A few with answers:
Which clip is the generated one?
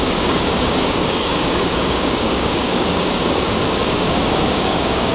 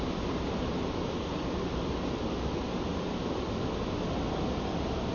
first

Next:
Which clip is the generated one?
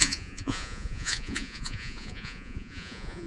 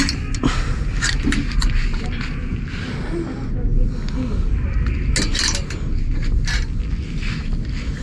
first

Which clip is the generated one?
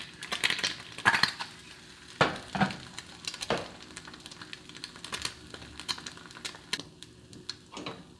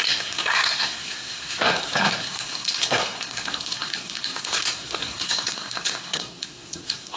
second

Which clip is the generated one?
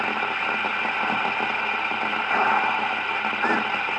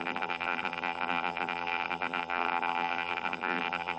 second